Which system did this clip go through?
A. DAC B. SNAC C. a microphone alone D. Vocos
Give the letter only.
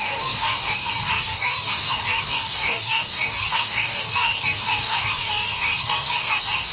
A